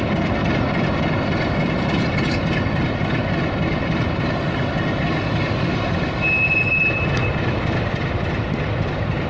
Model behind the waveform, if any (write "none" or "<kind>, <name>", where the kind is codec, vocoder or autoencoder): none